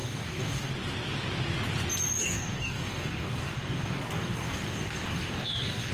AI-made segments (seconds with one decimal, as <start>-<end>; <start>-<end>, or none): 0.0-0.7; 2.2-5.9